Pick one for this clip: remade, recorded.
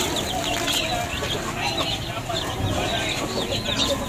recorded